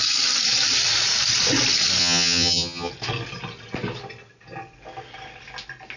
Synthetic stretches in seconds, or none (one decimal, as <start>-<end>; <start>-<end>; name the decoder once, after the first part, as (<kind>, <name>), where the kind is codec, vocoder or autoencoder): 2.0-2.9 (vocoder, HiFi-GAN)